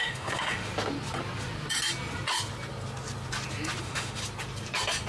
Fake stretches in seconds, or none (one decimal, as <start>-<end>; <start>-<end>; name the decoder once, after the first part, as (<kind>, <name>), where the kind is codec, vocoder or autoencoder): 0.0-0.7 (autoencoder, DAC-VAE); 3.8-4.2